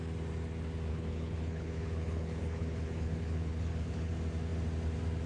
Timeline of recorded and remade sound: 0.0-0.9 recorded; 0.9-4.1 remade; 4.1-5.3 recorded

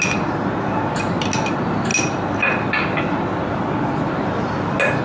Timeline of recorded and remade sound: 0.0-5.0 recorded

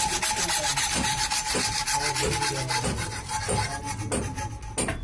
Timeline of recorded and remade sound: 0.0-5.0 recorded

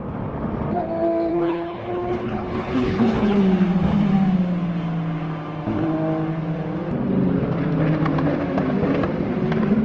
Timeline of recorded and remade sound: 0.0-1.3 recorded; 1.3-3.4 remade; 3.4-9.8 recorded

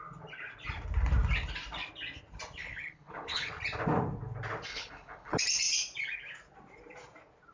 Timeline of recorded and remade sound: 0.0-2.6 recorded; 2.6-3.5 remade; 3.5-4.7 recorded; 4.7-5.4 remade; 5.4-7.5 recorded